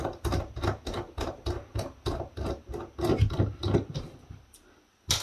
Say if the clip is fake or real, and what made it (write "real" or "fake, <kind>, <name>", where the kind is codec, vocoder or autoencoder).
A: real